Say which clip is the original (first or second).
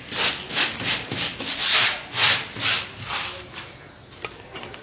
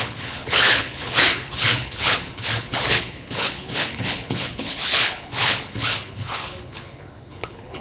first